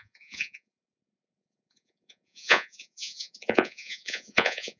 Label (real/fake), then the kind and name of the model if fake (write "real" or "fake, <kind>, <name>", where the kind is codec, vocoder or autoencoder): fake, vocoder, Vocos